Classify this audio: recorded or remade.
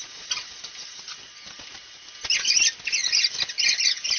recorded